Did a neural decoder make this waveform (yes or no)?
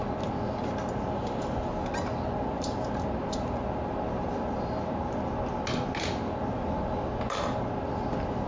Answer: no